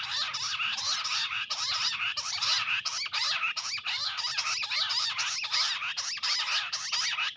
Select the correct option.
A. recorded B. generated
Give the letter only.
A